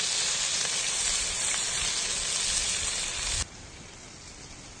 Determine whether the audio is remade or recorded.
recorded